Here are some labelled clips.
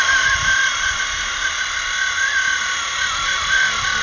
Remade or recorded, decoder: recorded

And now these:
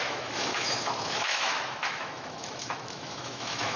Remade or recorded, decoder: remade, autoencoder, DAC-VAE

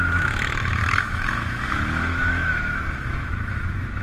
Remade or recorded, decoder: remade, autoencoder, DAC-VAE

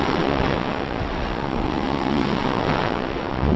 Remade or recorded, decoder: remade, vocoder, WaveNeXt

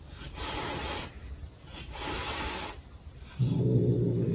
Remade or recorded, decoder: remade, vocoder, BigVGAN v2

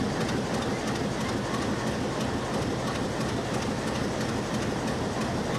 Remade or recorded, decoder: recorded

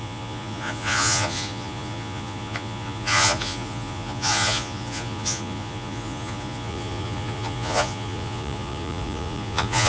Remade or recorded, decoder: remade, vocoder, Vocos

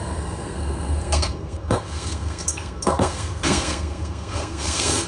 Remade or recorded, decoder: remade, codec, SNAC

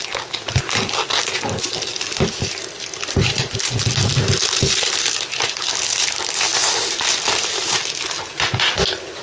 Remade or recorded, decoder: recorded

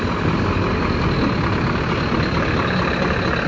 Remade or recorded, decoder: recorded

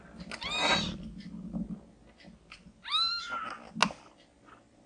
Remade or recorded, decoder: recorded